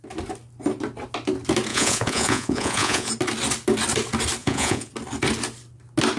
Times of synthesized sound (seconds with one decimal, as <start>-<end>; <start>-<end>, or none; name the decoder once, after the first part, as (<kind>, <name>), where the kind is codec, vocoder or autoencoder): 1.7-3.1 (vocoder, Vocos); 4.4-4.9